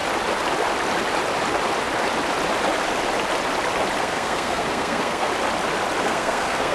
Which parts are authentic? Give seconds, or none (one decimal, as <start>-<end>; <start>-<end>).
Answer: 0.0-4.0; 5.3-6.0